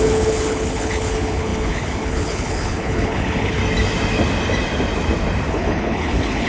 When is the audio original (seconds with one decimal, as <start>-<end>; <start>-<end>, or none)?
3.6-5.5